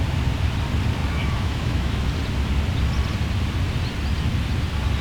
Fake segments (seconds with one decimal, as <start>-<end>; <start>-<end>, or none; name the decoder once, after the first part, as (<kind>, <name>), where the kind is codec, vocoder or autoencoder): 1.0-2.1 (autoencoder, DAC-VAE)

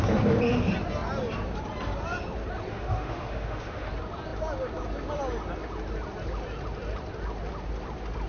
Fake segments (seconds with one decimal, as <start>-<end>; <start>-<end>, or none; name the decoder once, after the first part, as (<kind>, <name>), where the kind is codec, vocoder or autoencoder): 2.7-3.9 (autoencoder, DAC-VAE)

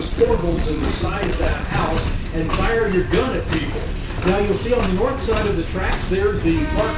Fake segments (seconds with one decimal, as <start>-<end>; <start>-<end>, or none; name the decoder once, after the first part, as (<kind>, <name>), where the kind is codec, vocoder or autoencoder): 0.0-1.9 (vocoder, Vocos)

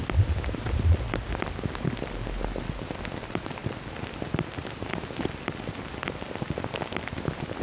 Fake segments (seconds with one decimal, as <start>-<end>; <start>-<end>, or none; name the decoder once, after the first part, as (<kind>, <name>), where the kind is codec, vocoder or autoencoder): 3.6-4.3 (vocoder, BigVGAN v2)